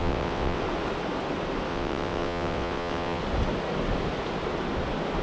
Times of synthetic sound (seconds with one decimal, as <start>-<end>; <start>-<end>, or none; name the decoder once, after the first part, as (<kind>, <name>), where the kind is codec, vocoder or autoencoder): 0.0-0.6 (vocoder, WaveNeXt); 1.7-3.2

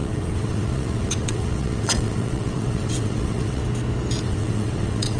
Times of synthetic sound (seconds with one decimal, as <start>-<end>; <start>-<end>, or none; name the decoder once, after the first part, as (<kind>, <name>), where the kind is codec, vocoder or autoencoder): 0.0-3.6 (vocoder, WaveNeXt); 4.2-5.2